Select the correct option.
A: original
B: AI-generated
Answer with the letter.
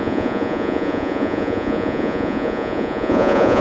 B